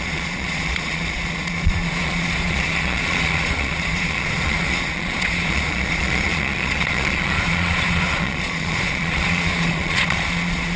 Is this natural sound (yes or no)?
no